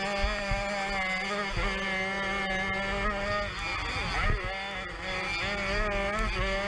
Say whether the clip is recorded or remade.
recorded